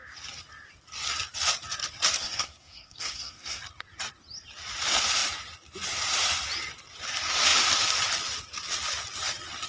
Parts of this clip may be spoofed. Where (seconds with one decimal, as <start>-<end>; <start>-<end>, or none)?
2.2-3.6